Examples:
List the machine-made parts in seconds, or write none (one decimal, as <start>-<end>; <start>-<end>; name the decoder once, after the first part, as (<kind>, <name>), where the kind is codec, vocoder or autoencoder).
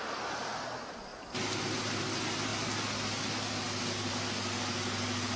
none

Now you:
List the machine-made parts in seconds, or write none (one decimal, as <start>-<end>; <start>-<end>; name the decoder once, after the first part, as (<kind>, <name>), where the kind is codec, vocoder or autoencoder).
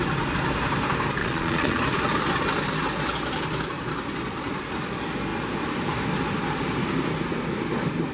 1.2-1.8 (vocoder, Vocos)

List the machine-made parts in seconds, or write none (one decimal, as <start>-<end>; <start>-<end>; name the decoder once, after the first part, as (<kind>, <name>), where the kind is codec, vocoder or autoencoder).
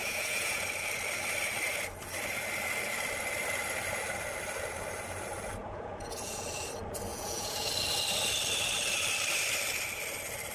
0.0-0.6 (vocoder, Vocos); 5.6-6.5; 7.1-7.7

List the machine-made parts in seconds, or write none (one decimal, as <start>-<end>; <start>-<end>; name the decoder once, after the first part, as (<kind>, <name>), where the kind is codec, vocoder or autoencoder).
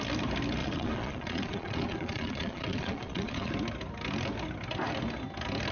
0.6-3.5 (vocoder, Vocos)